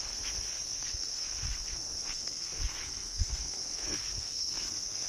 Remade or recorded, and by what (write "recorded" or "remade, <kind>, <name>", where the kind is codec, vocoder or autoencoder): remade, codec, SNAC